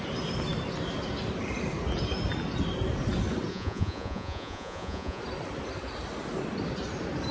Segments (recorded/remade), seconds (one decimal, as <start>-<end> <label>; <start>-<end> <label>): 0.0-3.5 recorded; 3.5-5.2 remade; 5.2-7.3 recorded